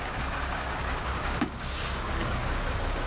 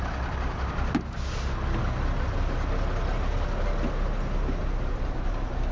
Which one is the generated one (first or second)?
first